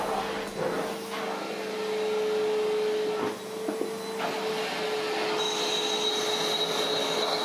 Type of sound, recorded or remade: recorded